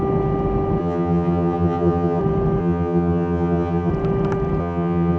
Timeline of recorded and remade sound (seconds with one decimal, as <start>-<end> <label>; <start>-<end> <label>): 0.0-0.8 recorded; 0.8-2.2 remade; 2.2-2.6 recorded; 2.6-3.9 remade; 3.9-4.6 recorded; 4.6-5.2 remade